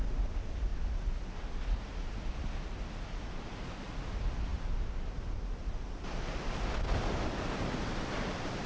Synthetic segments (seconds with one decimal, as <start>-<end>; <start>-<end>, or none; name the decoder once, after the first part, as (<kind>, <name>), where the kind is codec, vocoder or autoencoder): none